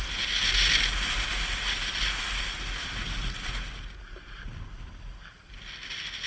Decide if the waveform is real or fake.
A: real